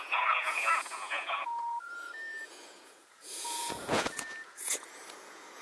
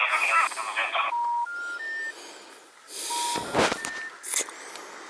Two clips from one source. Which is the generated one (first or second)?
first